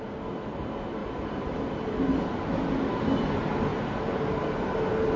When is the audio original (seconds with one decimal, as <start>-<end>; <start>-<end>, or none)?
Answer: 0.0-1.0; 1.5-3.7; 4.4-5.2